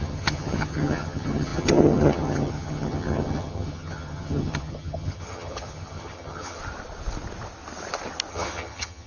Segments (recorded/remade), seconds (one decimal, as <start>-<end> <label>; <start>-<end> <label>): 0.0-6.6 remade; 6.6-8.3 recorded; 8.3-9.1 remade